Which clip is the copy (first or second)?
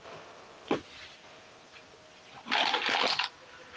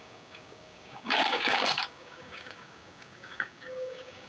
second